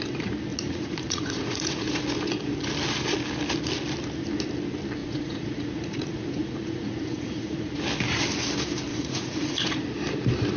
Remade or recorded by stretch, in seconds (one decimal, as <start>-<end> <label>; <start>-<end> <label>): 0.0-0.5 recorded; 0.5-2.0 remade; 2.0-5.0 recorded; 5.0-7.7 remade; 7.7-8.9 recorded; 8.9-9.8 remade; 9.8-10.6 recorded